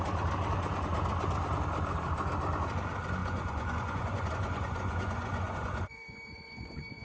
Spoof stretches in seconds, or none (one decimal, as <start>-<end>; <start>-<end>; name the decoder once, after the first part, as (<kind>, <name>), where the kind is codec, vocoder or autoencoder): 3.2-7.0 (vocoder, Vocos)